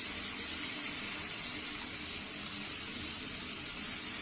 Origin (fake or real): real